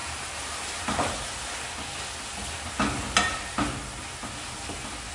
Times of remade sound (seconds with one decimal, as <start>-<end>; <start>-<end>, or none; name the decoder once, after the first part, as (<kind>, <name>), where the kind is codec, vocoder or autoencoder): 0.0-1.1 (vocoder, BigVGAN v2)